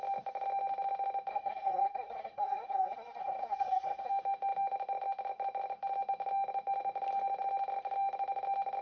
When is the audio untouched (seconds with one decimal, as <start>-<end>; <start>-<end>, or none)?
0.0-1.3; 4.1-8.8